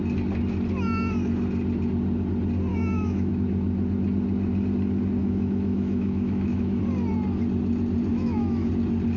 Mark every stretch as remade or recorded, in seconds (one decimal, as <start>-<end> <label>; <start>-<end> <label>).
0.0-2.7 recorded; 2.7-3.3 remade; 3.3-5.2 recorded; 5.2-6.8 remade; 6.8-8.1 recorded; 8.1-8.7 remade; 8.7-9.2 recorded